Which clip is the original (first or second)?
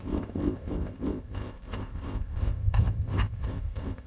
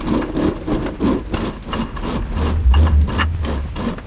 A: second